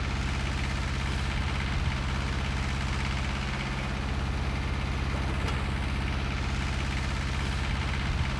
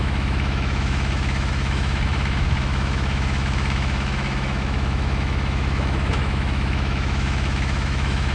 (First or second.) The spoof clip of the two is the second